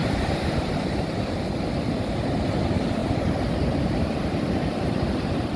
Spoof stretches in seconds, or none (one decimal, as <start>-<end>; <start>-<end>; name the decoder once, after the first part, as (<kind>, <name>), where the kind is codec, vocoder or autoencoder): 0.0-0.7 (vocoder, BigVGAN v2); 3.0-4.7